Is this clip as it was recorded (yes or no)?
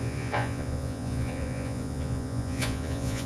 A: no